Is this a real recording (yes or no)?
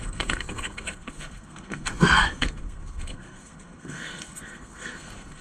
no